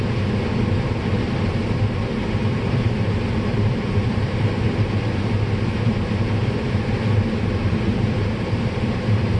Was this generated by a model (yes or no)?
yes